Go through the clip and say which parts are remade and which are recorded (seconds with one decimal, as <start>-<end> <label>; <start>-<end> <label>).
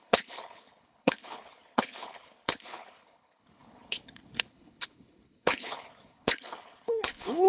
0.0-7.5 remade